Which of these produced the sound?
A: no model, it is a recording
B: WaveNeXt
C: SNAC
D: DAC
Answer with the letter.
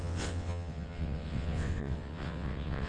B